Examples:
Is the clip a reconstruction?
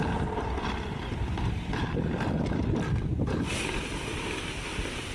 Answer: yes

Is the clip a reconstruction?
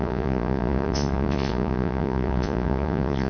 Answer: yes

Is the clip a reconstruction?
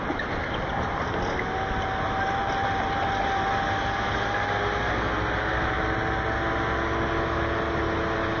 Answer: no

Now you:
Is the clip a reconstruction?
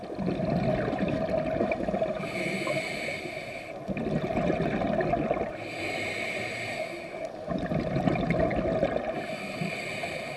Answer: no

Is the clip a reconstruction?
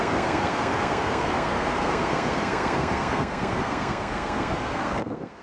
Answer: yes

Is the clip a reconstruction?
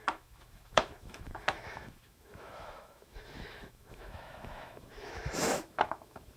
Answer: yes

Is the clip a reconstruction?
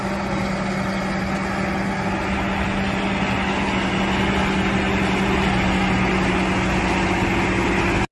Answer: no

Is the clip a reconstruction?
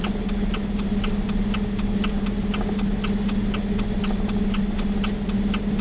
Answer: no